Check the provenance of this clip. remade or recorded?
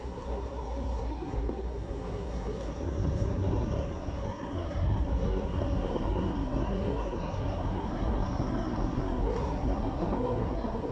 remade